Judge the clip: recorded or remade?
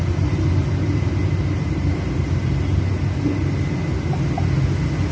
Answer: recorded